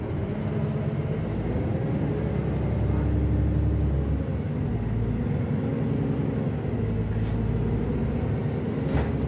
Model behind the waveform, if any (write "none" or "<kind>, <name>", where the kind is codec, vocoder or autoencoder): none